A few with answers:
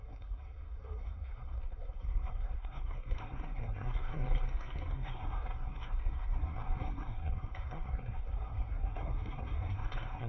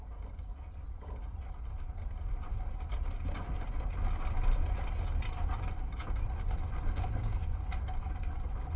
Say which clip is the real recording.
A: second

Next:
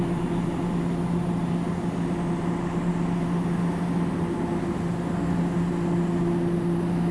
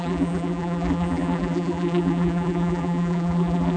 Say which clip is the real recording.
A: first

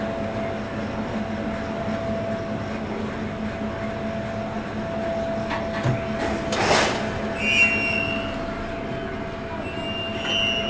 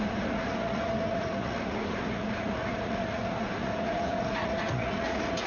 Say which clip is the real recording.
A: first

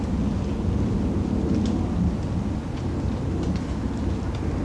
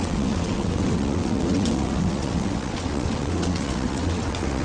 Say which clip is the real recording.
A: first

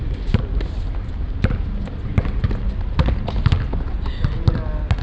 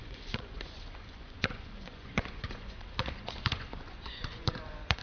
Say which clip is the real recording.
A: first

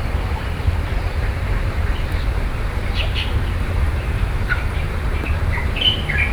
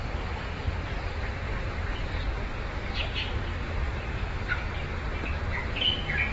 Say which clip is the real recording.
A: second